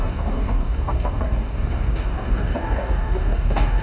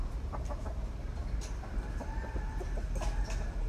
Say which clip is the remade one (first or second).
first